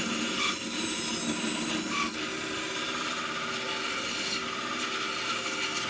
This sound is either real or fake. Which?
real